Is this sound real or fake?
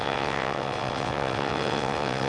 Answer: fake